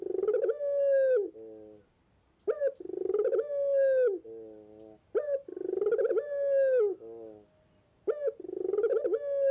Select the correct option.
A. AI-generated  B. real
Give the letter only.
B